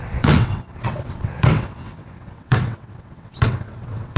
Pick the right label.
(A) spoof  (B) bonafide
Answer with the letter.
A